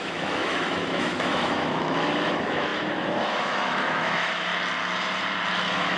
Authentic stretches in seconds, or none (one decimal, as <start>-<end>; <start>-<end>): 4.5-5.6